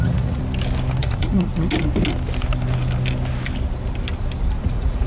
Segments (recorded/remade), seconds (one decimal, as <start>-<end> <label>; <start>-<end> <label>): 0.0-0.4 remade; 0.4-1.0 recorded; 1.0-1.5 remade; 1.5-4.6 recorded; 4.6-5.1 remade